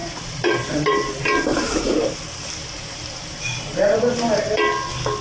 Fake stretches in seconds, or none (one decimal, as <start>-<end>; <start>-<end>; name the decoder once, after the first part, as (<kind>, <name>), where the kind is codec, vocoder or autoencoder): 0.0-1.1 (vocoder, BigVGAN v2); 1.5-4.6